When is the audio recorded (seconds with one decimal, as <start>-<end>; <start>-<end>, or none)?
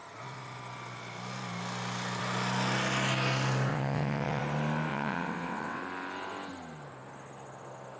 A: 0.0-3.7; 4.4-4.9; 5.8-8.0